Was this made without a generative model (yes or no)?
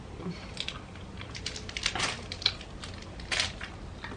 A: yes